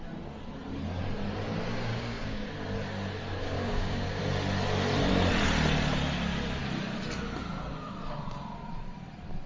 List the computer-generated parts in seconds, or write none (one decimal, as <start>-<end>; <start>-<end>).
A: 1.9-2.5; 3.4-4.2